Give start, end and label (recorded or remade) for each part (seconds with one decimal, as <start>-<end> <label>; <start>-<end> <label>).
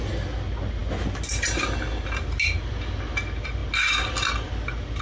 0.0-5.0 recorded